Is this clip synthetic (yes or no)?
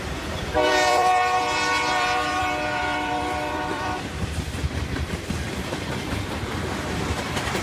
yes